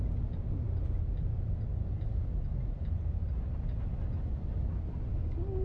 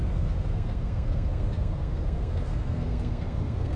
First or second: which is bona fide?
first